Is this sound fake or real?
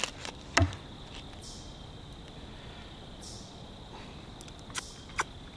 real